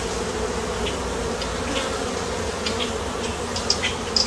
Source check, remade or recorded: recorded